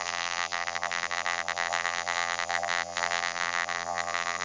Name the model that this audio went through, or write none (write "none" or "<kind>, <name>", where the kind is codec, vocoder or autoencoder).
vocoder, BigVGAN v2